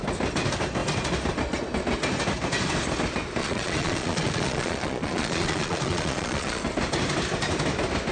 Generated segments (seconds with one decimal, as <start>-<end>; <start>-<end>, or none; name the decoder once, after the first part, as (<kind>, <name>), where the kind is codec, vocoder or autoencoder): 3.4-6.6 (vocoder, Vocos)